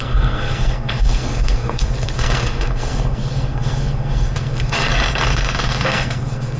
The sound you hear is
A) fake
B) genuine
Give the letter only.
A